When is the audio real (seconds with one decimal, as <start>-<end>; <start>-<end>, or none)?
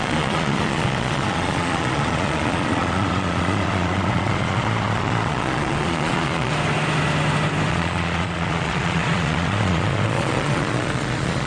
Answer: 6.5-7.7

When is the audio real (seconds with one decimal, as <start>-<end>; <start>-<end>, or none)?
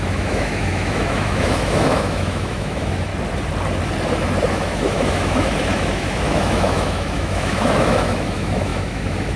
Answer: 3.1-4.5